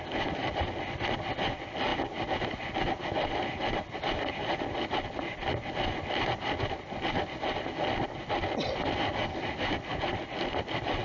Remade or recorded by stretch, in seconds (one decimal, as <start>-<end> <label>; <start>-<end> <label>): 0.0-11.0 recorded